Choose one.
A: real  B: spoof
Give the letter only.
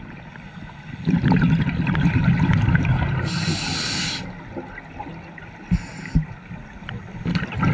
A